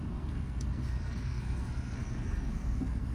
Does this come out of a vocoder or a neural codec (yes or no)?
yes